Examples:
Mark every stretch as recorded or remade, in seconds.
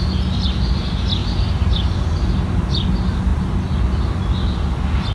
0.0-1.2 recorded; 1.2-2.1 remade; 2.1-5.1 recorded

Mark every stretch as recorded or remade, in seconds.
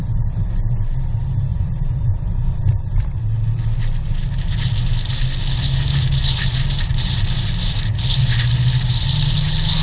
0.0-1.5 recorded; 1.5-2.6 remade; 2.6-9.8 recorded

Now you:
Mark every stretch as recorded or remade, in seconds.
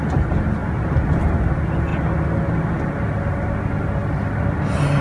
0.0-5.0 recorded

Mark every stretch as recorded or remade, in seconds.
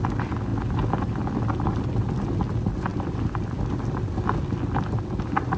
0.0-5.6 recorded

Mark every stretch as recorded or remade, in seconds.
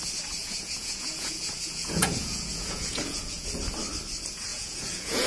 0.0-0.4 recorded; 0.4-3.6 remade; 3.6-4.5 recorded; 4.5-5.3 remade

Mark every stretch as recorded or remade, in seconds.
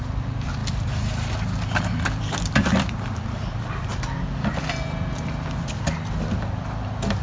0.0-0.6 remade; 0.6-1.8 recorded; 1.8-3.9 remade; 3.9-7.2 recorded